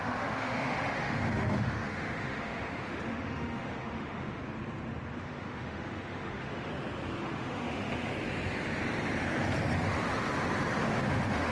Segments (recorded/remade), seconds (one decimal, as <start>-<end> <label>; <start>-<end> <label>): 0.0-4.4 remade; 4.4-5.2 recorded; 5.2-6.7 remade; 6.7-7.2 recorded; 7.2-8.1 remade; 8.1-10.8 recorded; 10.8-11.5 remade

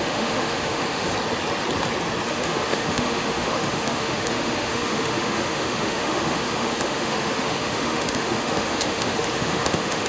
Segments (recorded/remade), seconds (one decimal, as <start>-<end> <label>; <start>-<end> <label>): 0.0-1.1 remade; 1.1-2.3 recorded; 2.3-10.1 remade

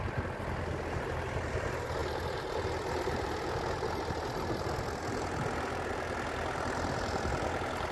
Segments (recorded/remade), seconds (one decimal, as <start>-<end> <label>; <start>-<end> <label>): 0.0-7.9 recorded

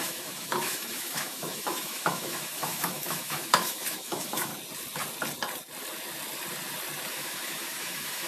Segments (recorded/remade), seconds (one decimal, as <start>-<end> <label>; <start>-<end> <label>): 0.0-4.5 remade; 4.5-7.1 recorded; 7.1-8.3 remade

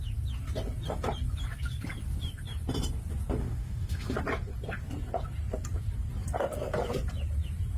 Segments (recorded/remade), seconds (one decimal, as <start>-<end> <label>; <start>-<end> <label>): 0.0-3.4 recorded; 3.4-4.2 remade; 4.2-7.8 recorded

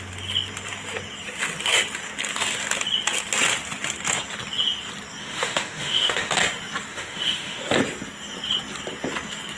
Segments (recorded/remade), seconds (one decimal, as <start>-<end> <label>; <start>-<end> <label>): 0.0-5.2 recorded; 5.2-6.3 remade; 6.3-6.9 recorded; 6.9-7.6 remade; 7.6-9.6 recorded

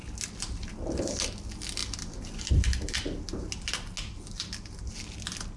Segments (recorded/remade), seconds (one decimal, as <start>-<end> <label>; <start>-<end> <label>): 0.0-5.6 recorded

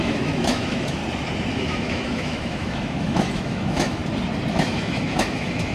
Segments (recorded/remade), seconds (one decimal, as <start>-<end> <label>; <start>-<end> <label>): 0.0-1.0 remade; 1.0-1.5 recorded; 1.5-4.0 remade; 4.0-4.5 recorded; 4.5-5.7 remade